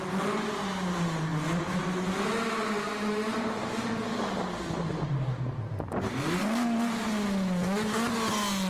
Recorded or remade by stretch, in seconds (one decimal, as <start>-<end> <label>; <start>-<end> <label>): 0.0-6.4 recorded; 6.4-6.9 remade; 6.9-8.7 recorded